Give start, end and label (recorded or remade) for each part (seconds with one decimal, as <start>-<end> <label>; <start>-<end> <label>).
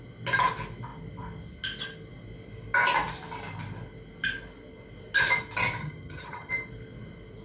0.0-5.8 recorded; 5.8-6.5 remade; 6.5-7.4 recorded